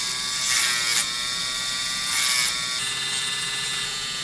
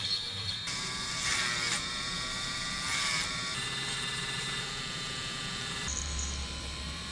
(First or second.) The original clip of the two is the first